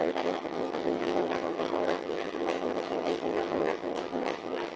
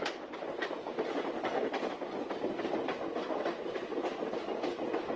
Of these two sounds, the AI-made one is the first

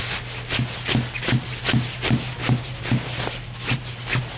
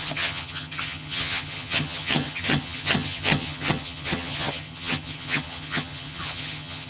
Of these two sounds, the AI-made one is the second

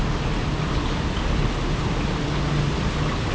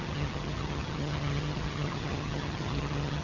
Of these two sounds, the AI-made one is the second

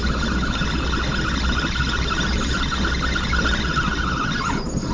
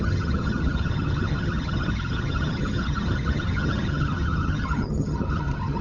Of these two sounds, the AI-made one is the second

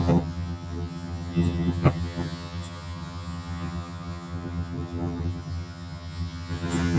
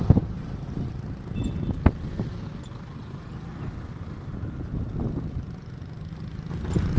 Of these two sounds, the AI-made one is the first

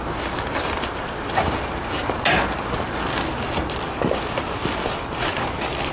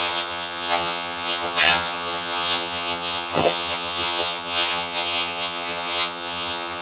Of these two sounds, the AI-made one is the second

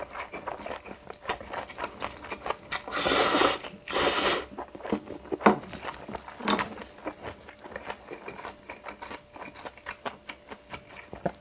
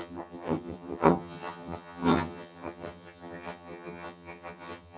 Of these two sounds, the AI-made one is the second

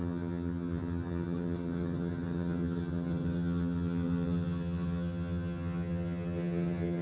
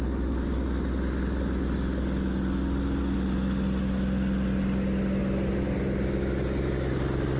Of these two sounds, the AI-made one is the first